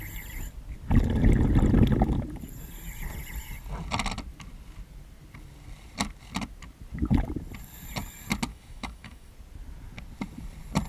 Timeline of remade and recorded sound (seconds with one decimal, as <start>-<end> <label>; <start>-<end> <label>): 0.0-8.5 recorded; 8.5-9.3 remade; 9.3-10.9 recorded